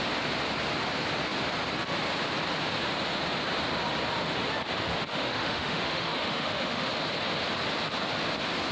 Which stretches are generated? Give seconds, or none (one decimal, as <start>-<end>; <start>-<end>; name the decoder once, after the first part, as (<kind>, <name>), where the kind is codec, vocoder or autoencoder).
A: 5.1-6.9 (autoencoder, DAC-VAE)